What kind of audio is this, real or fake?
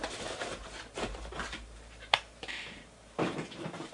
fake